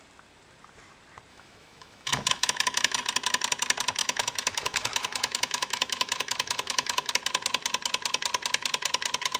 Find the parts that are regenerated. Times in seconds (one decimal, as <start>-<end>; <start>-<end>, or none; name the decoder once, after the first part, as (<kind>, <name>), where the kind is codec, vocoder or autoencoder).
1.3-3.0 (autoencoder, DAC-VAE); 4.0-7.1

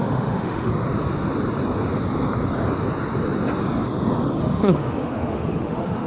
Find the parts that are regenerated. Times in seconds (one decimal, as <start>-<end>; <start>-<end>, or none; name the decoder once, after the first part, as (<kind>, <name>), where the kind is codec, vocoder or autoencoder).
0.0-0.7 (autoencoder, DAC-VAE); 4.4-6.1

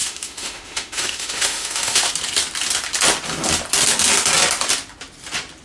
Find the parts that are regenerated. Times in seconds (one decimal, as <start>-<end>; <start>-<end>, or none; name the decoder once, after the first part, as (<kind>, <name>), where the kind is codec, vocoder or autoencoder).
0.0-2.1 (autoencoder, DAC-VAE)

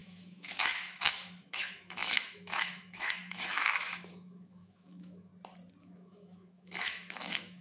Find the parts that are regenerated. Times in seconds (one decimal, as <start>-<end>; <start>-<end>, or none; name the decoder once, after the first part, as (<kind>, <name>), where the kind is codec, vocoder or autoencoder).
0.0-5.3 (autoencoder, DAC-VAE); 5.8-7.6

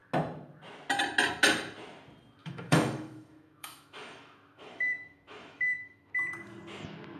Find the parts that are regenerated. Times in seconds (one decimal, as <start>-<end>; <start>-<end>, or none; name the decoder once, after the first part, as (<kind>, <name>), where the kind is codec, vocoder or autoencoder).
2.4-6.1 (autoencoder, DAC-VAE)

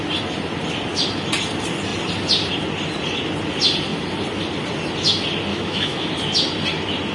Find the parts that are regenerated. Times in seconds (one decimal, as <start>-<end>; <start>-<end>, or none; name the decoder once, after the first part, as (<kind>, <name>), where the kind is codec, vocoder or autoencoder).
5.5-6.1 (autoencoder, DAC-VAE)

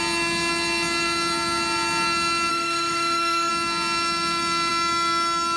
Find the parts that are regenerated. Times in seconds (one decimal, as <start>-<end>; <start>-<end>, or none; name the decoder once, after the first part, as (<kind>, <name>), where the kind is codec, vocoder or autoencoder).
2.5-3.5 (autoencoder, DAC-VAE)

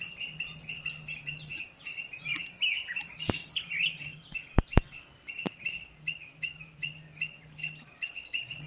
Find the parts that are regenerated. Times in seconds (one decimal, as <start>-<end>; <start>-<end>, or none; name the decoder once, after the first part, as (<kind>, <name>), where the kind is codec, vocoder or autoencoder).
6.3-6.8 (autoencoder, DAC-VAE)